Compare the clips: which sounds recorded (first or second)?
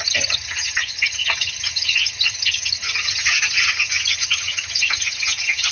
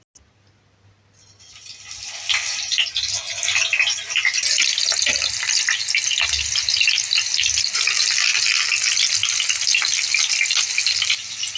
second